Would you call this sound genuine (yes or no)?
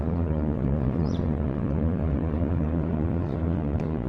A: no